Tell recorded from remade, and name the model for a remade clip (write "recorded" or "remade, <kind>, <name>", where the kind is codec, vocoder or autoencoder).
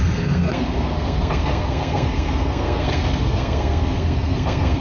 remade, codec, SNAC